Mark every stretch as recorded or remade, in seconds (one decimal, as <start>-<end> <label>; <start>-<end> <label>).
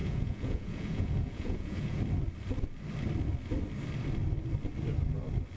0.0-2.0 remade; 2.0-5.6 recorded